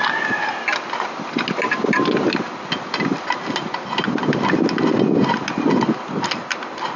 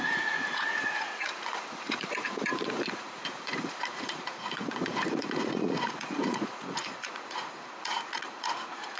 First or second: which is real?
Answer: first